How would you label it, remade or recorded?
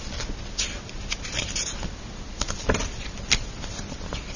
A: recorded